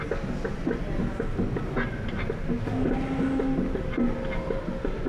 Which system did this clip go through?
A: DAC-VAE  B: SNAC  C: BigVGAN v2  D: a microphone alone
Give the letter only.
D